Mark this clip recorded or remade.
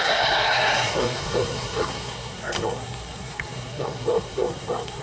remade